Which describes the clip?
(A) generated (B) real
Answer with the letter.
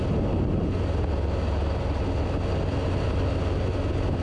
B